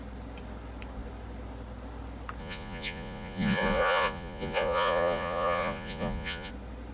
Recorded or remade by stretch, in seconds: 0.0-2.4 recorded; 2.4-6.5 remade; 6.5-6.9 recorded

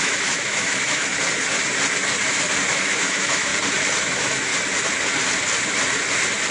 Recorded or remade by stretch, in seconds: 0.0-1.1 remade; 1.1-2.7 recorded; 2.7-3.5 remade; 3.5-4.0 recorded; 4.0-4.5 remade; 4.5-6.5 recorded